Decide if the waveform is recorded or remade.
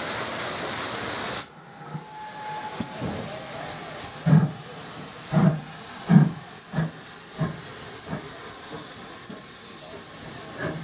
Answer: recorded